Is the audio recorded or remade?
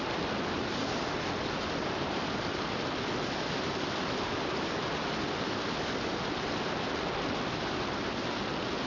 recorded